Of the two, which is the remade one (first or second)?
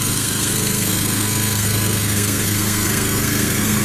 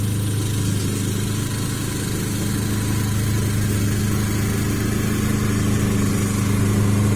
first